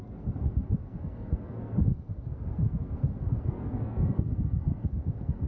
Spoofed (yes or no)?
yes